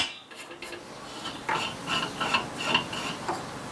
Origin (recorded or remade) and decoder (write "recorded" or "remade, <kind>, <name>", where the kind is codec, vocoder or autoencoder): recorded